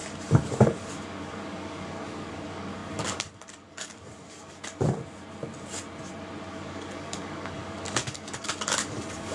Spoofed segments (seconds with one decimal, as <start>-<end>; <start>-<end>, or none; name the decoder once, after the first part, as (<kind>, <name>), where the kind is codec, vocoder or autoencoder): 0.0-4.6 (codec, DAC); 6.5-9.3